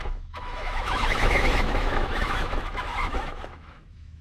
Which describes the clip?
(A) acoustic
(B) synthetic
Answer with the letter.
B